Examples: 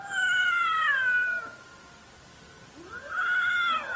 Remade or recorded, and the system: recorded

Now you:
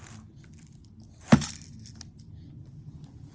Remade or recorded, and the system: recorded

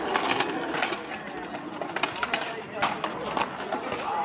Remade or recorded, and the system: recorded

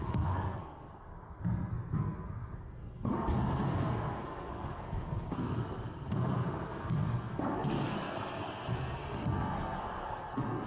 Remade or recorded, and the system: remade, codec, SNAC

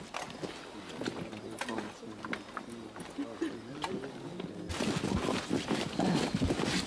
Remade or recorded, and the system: recorded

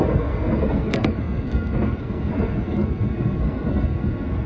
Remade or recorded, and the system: remade, codec, SNAC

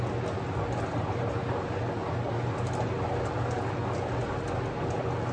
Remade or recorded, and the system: recorded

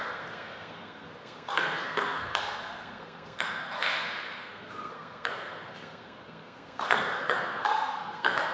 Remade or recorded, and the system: remade, codec, SNAC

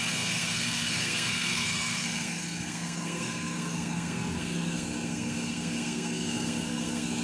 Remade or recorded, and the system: remade, codec, SNAC